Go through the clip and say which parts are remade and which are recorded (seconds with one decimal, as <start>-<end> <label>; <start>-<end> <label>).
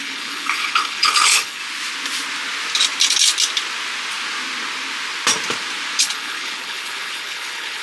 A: 0.0-1.6 remade; 1.6-6.0 recorded; 6.0-7.8 remade